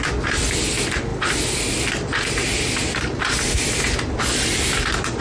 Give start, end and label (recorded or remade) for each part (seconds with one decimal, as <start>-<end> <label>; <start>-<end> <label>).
0.0-5.2 recorded